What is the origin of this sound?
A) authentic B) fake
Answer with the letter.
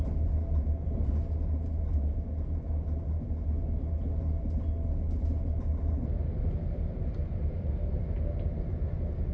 A